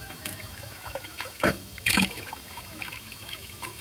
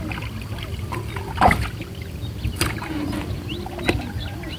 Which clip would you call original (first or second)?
second